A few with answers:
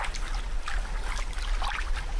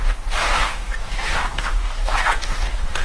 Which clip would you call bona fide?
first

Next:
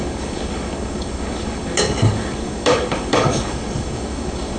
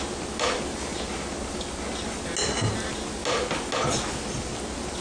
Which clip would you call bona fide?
second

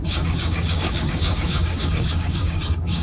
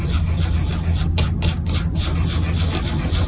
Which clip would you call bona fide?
second